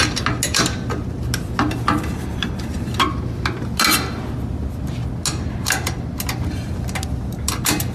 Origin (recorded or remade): recorded